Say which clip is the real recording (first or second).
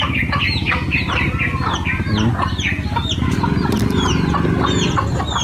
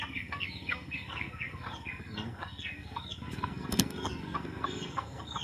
first